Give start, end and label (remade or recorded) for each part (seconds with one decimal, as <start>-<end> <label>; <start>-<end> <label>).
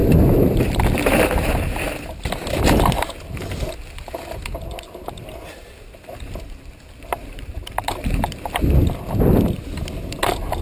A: 0.0-1.9 remade; 1.9-7.2 recorded; 7.2-7.8 remade; 7.8-10.6 recorded